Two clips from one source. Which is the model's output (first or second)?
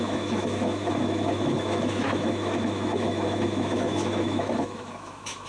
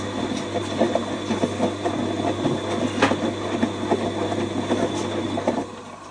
first